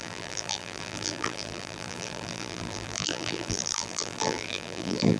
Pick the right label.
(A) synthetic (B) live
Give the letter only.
A